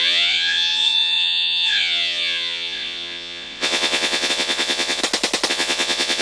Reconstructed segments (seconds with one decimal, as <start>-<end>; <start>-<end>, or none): 0.0-5.0; 5.5-6.2